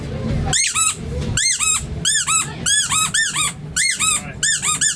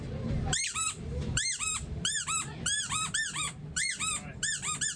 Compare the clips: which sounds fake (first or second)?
second